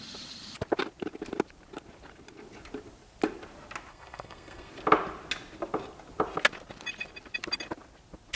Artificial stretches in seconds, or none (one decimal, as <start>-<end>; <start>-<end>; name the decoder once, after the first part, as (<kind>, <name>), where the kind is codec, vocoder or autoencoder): 3.9-4.7 (codec, SNAC)